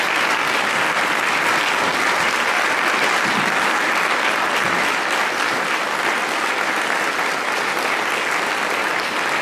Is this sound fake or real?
real